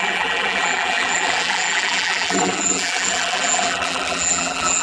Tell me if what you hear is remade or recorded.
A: remade